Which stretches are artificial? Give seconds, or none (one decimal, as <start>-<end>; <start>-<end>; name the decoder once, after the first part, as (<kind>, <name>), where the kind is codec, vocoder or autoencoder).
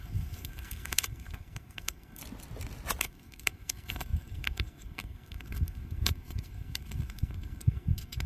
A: 0.0-2.2 (codec, SNAC); 3.0-8.3